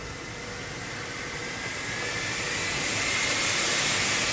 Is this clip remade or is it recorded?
recorded